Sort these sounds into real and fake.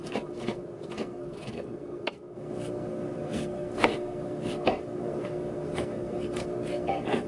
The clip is fake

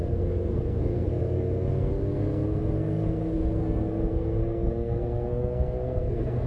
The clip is fake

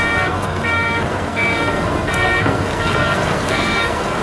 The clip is fake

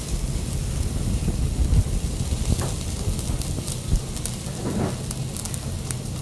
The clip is real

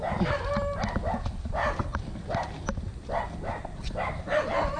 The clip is real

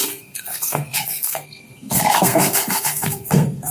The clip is fake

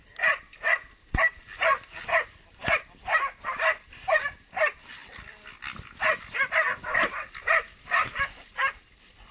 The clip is real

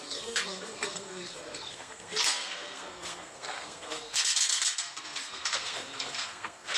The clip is fake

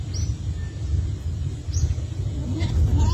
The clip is real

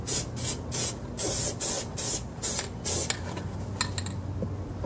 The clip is real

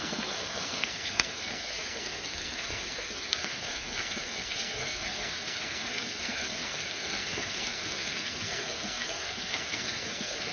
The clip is fake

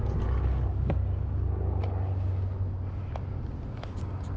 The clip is real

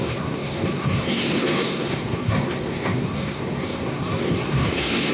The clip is fake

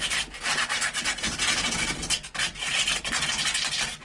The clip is real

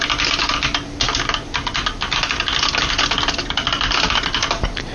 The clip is real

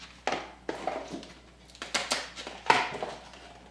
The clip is real